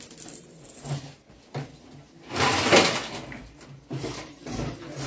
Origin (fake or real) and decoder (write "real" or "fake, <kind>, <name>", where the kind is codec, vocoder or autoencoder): real